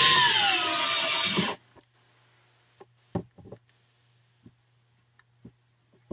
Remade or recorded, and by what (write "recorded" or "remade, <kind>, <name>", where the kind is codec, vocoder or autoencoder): recorded